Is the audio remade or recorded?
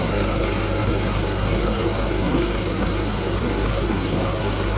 remade